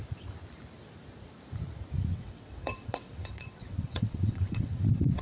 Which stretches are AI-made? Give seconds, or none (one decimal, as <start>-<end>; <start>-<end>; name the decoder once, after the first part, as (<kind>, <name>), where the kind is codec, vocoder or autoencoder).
2.1-5.2 (vocoder, WaveNeXt)